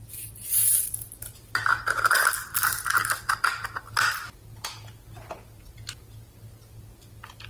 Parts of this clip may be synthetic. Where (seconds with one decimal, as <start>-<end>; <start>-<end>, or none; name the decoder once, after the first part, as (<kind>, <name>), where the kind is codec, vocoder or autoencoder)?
none

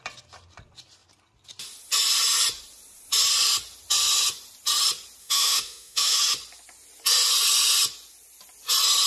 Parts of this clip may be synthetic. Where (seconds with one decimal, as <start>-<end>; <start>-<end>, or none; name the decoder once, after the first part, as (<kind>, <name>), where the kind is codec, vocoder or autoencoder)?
5.2-6.2 (autoencoder, DAC-VAE)

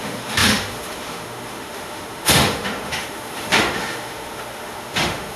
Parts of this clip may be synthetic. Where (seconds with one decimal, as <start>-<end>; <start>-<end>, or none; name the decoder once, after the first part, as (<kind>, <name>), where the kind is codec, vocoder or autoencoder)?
0.0-5.4 (autoencoder, DAC-VAE)

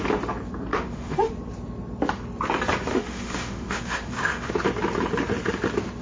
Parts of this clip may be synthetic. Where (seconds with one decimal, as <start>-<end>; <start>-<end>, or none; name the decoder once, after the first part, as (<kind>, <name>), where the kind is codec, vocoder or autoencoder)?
0.7-1.3 (autoencoder, DAC-VAE); 2.9-4.5

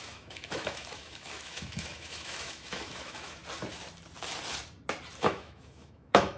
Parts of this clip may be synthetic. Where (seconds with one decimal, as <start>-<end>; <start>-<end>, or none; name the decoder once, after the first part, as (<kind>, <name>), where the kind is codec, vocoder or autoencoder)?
0.0-3.4 (autoencoder, DAC-VAE); 5.2-6.4

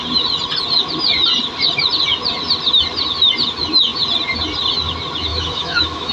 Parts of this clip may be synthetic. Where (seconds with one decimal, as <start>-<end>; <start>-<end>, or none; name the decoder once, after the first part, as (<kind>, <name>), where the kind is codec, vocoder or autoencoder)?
5.3-6.1 (autoencoder, DAC-VAE)

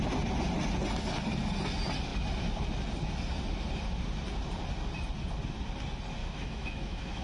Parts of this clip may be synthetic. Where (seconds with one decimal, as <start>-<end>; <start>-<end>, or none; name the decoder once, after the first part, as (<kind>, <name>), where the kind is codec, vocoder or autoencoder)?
6.2-7.2 (autoencoder, DAC-VAE)